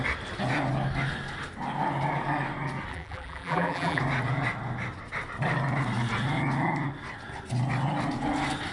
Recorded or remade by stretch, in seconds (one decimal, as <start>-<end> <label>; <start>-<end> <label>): 0.0-2.9 recorded; 2.9-4.0 remade; 4.0-8.7 recorded